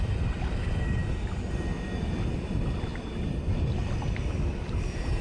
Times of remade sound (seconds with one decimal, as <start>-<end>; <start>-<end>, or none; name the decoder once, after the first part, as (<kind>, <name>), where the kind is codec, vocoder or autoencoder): 0.0-1.0 (vocoder, BigVGAN v2); 2.4-2.9; 3.6-5.2